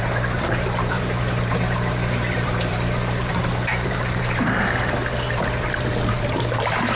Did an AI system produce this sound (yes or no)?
yes